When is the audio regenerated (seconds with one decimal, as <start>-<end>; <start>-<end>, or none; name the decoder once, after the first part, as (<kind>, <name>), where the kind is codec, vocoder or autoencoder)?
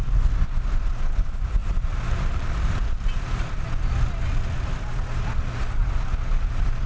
1.6-3.2 (vocoder, BigVGAN v2)